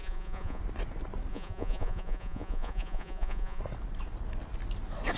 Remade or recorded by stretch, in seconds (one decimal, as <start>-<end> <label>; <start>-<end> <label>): 0.0-0.6 remade; 0.6-1.3 recorded; 1.3-3.6 remade; 3.6-5.2 recorded